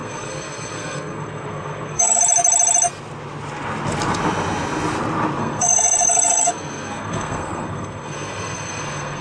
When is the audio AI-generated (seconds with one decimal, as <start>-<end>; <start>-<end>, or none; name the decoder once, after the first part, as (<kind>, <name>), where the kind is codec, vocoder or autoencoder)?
0.0-2.2 (codec, SNAC); 5.4-9.2